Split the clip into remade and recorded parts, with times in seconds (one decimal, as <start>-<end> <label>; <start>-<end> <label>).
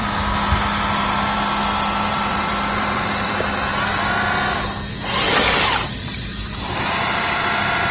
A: 0.0-2.1 recorded; 2.1-3.7 remade; 3.7-6.9 recorded; 6.9-7.9 remade